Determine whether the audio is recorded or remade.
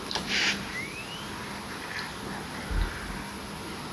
recorded